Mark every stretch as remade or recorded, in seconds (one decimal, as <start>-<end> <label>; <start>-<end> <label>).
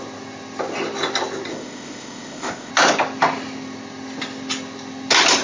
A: 0.0-1.5 recorded; 1.5-2.7 remade; 2.7-5.4 recorded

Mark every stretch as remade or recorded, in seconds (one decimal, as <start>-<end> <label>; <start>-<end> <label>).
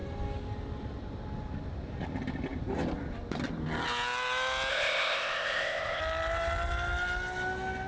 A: 0.0-4.7 recorded; 4.7-6.0 remade; 6.0-7.9 recorded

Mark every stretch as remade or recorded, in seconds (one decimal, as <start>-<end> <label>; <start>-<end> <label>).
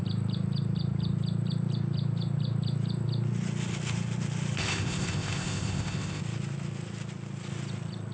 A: 0.0-4.6 recorded; 4.6-6.2 remade; 6.2-8.1 recorded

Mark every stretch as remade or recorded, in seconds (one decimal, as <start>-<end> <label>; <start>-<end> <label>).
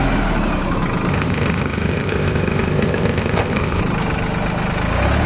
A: 0.0-1.1 recorded; 1.1-3.8 remade; 3.8-5.3 recorded